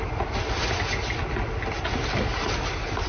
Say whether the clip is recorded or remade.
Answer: recorded